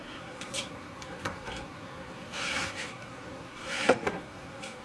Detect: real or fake fake